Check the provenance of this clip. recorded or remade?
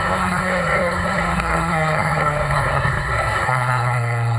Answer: remade